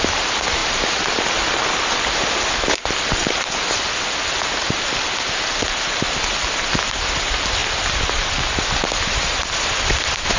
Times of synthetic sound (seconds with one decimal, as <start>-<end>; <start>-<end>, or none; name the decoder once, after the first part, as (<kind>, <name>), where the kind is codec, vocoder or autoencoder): none